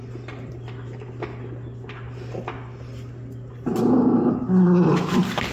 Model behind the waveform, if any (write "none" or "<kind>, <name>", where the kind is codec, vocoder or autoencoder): none